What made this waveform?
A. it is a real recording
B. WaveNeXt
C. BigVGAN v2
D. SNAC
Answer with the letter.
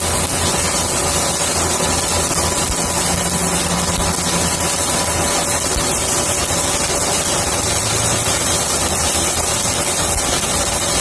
A